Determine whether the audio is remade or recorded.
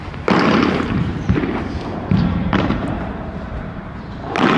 remade